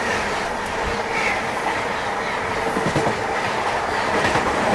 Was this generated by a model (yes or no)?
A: no